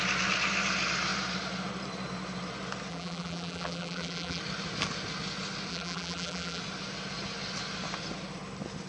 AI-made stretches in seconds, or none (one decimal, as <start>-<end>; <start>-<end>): 2.9-4.4; 5.7-6.6